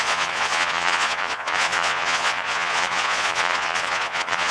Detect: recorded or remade remade